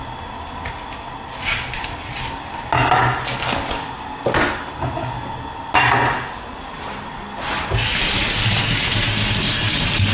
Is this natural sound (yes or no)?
yes